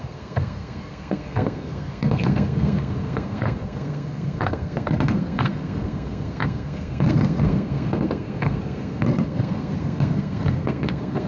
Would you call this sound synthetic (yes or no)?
yes